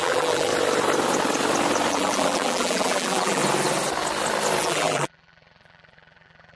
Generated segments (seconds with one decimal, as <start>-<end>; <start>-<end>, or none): 0.0-0.5; 1.9-3.4; 4.6-6.6